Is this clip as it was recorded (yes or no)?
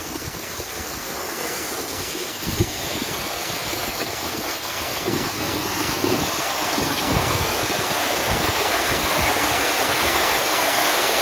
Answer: no